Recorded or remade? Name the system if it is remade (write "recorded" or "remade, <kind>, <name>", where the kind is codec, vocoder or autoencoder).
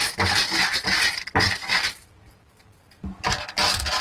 recorded